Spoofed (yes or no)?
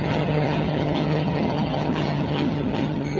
yes